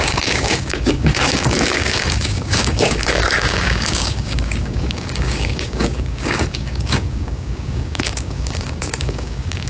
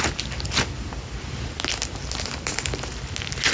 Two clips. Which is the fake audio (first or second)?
first